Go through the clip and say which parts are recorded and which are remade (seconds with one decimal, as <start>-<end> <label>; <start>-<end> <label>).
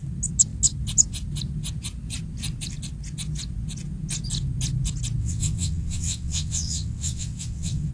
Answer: 0.0-5.2 recorded; 5.2-7.9 remade